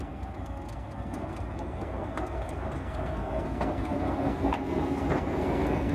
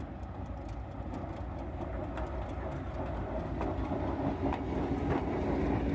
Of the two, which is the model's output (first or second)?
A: first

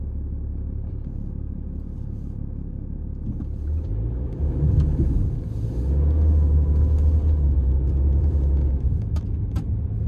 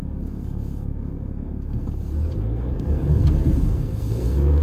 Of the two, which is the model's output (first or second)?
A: second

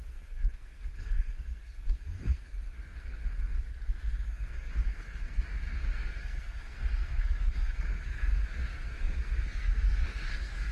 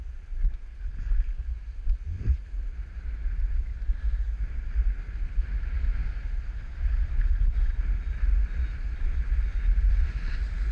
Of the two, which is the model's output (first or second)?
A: first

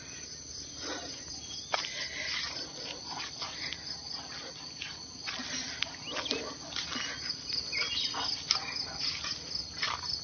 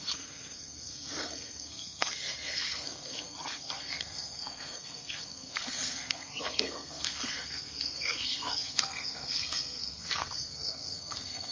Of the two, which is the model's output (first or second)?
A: second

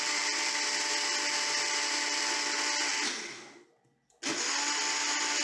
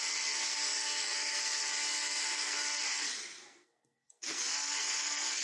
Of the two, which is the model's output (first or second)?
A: second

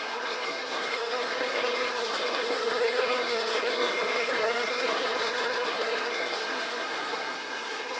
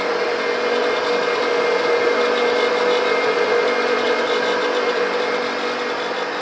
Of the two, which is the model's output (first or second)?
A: first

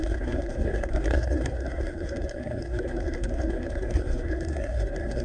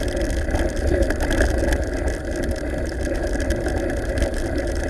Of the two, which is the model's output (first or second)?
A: first